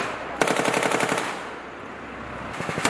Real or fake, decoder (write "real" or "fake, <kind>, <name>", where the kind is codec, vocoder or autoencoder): real